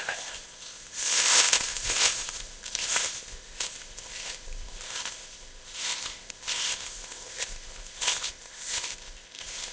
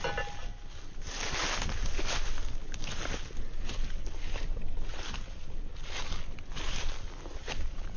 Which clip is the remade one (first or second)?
first